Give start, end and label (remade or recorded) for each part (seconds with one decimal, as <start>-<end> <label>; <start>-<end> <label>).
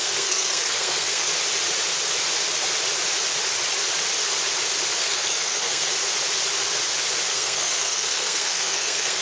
0.0-1.3 remade; 1.3-5.0 recorded; 5.0-5.9 remade; 5.9-7.3 recorded; 7.3-9.2 remade